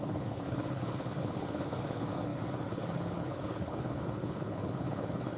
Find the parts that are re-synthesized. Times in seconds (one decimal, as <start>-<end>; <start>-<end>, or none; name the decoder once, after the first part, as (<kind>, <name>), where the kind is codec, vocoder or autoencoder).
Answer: 0.0-5.4 (codec, HILCodec)